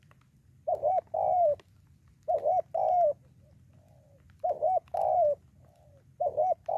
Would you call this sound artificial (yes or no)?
no